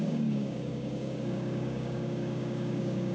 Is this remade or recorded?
remade